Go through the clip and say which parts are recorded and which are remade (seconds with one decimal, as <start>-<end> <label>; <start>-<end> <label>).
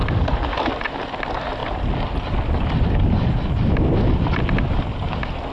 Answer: 0.0-1.6 recorded; 1.6-4.3 remade; 4.3-5.5 recorded